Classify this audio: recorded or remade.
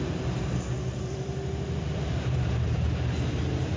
remade